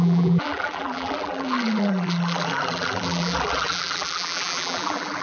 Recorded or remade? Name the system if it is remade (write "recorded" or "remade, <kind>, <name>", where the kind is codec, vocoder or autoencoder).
remade, vocoder, BigVGAN v2